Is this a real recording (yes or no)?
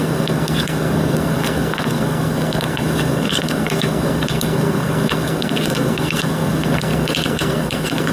no